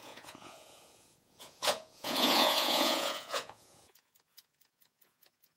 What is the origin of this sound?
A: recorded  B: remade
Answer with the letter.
B